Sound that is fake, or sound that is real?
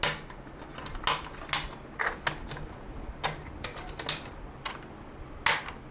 real